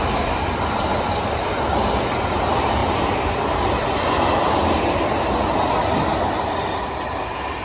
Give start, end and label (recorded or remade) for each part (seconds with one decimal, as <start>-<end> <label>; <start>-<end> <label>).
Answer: 0.0-7.6 recorded